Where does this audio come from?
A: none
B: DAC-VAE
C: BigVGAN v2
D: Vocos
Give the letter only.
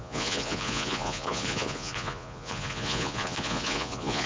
D